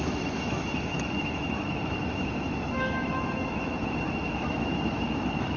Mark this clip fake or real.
fake